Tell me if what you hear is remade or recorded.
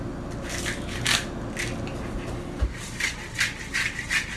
recorded